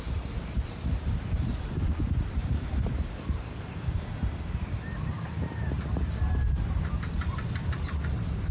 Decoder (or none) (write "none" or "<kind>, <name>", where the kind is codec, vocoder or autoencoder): vocoder, BigVGAN v2